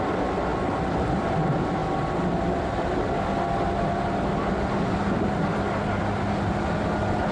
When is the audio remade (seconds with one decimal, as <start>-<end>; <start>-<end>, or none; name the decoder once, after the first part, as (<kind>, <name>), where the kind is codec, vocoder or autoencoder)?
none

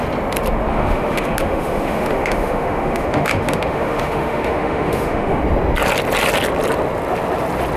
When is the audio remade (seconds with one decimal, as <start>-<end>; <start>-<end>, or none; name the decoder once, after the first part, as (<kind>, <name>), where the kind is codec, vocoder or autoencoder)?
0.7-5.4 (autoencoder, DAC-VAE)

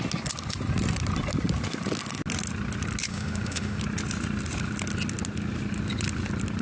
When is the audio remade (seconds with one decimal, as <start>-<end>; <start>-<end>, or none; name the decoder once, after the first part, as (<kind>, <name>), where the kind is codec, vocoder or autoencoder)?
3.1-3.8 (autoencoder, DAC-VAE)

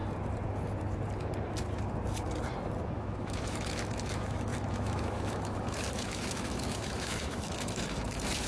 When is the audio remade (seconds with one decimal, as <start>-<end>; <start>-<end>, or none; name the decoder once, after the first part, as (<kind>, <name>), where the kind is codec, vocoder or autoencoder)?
2.8-8.5 (autoencoder, DAC-VAE)

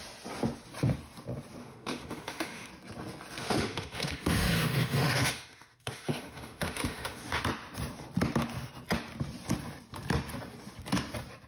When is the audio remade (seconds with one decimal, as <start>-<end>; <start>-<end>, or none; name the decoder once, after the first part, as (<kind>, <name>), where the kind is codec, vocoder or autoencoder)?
1.6-2.7 (autoencoder, DAC-VAE); 3.4-7.4